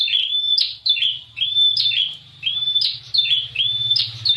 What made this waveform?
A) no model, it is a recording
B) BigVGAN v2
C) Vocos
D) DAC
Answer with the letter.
B